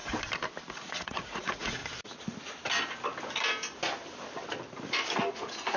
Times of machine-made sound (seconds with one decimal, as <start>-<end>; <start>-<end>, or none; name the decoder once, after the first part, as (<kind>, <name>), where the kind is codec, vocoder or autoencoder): 0.7-1.8 (vocoder, Vocos); 5.3-5.8